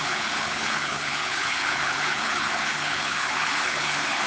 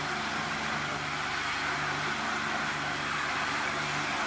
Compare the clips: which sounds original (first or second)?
second